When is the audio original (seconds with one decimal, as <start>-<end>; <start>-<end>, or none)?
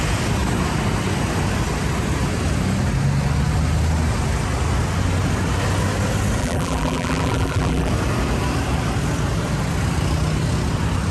0.0-6.4; 7.9-11.1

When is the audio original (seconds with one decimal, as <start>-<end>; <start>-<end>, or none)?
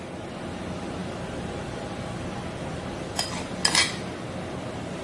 0.0-1.0; 4.0-5.0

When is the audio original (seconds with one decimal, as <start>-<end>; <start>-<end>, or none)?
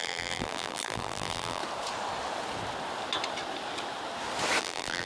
1.6-4.6